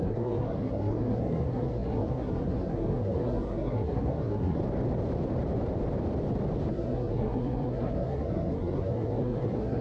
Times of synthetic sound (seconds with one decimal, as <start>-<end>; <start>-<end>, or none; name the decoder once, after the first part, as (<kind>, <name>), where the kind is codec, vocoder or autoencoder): 0.0-4.6 (codec, SNAC); 6.7-9.8